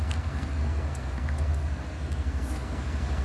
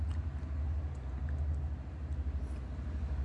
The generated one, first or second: first